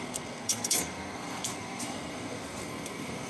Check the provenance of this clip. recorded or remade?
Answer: remade